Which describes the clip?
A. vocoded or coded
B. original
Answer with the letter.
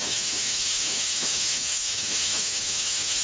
A